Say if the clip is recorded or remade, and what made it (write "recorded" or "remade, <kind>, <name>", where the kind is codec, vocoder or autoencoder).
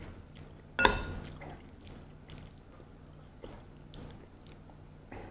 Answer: recorded